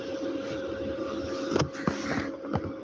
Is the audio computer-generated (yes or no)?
no